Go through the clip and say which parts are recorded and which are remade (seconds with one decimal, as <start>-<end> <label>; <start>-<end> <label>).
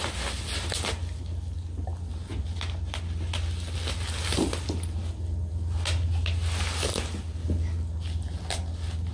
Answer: 0.0-9.1 recorded